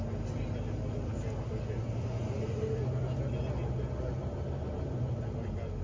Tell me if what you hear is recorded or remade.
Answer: recorded